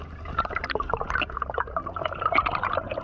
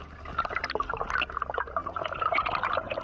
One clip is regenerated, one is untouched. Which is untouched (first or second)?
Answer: second